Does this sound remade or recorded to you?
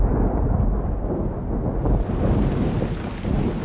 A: recorded